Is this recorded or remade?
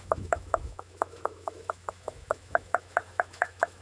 remade